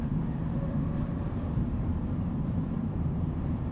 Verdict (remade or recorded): remade